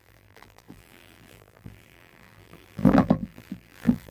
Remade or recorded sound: remade